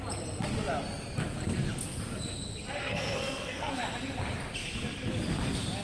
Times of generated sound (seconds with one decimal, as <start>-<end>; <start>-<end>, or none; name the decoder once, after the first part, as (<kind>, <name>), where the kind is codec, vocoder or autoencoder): 2.8-3.8 (codec, SNAC)